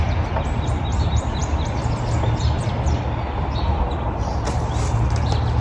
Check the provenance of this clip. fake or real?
real